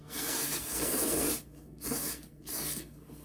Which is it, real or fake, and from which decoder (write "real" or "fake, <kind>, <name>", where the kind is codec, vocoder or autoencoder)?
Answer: fake, codec, SNAC